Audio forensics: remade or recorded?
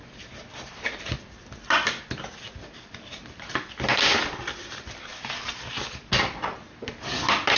recorded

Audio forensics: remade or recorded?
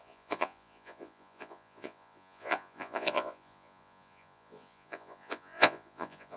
remade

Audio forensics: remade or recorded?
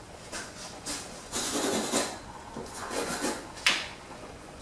remade